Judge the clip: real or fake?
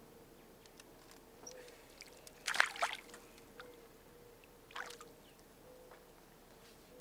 real